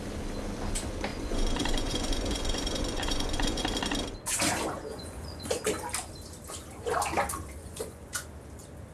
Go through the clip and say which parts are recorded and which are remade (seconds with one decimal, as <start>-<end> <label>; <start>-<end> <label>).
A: 0.0-1.1 recorded; 1.1-3.6 remade; 3.6-4.9 recorded; 4.9-5.5 remade; 5.5-7.6 recorded; 7.6-8.3 remade; 8.3-8.9 recorded